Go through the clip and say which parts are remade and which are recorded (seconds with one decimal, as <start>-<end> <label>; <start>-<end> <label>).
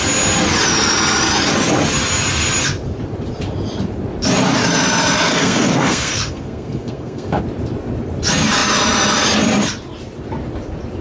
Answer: 0.0-5.3 recorded; 5.3-7.4 remade; 7.4-11.0 recorded